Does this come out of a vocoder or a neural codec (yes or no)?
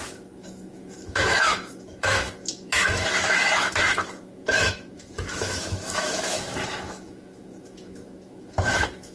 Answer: yes